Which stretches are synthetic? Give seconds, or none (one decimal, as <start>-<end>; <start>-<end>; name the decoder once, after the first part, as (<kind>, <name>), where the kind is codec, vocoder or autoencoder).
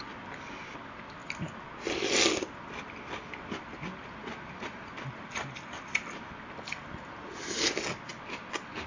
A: none